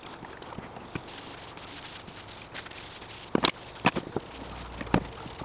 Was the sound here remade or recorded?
recorded